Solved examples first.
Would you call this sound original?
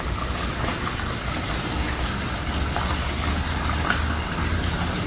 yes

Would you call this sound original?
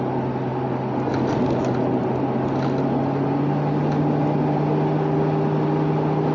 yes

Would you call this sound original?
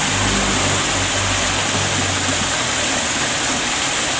yes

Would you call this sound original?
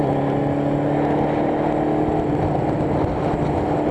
yes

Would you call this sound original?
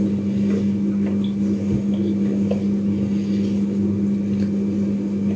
yes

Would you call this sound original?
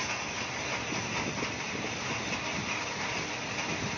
yes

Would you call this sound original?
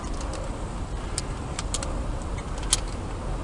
yes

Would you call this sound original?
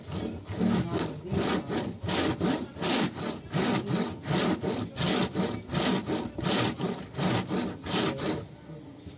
yes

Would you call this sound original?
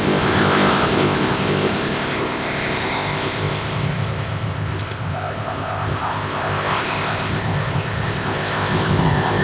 no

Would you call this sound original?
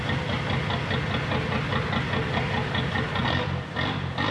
yes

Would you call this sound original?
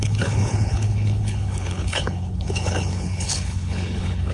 no